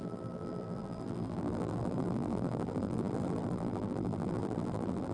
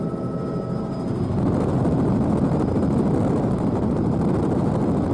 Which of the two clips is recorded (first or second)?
second